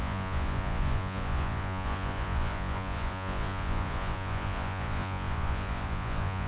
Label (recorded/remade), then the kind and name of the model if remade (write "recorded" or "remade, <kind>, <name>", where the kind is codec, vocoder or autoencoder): remade, vocoder, Vocos